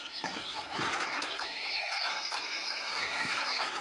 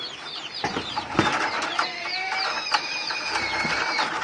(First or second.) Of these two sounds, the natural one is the second